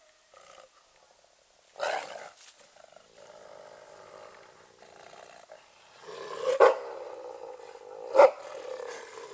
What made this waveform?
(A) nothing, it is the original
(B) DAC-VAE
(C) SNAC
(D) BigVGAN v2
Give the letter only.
A